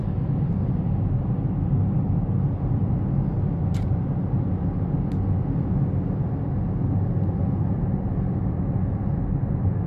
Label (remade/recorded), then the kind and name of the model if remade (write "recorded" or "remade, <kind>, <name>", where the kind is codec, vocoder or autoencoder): recorded